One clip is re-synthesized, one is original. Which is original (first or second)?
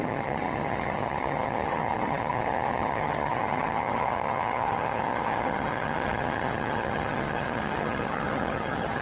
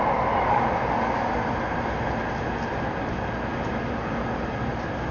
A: second